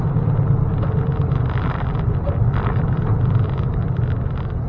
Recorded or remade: recorded